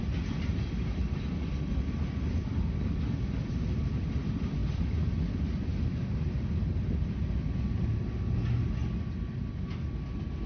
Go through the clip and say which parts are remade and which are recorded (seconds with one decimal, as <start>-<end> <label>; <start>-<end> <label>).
0.0-10.5 recorded